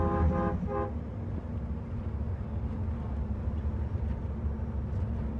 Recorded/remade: recorded